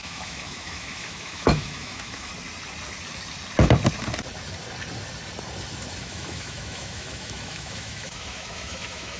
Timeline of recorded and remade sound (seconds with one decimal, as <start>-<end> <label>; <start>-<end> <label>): 0.0-2.3 remade; 2.3-6.0 recorded; 6.0-9.2 remade